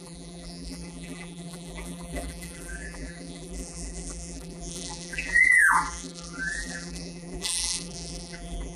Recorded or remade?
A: remade